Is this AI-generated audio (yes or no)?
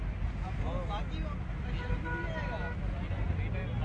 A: no